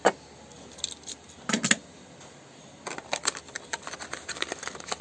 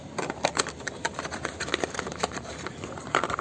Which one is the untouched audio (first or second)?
first